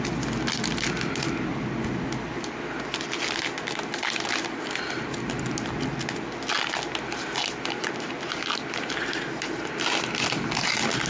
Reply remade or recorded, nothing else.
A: recorded